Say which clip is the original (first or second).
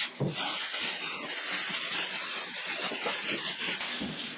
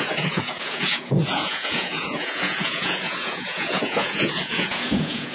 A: first